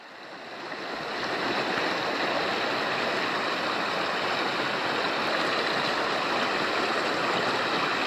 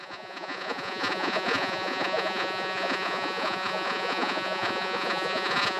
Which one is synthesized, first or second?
second